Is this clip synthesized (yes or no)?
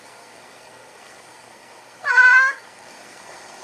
yes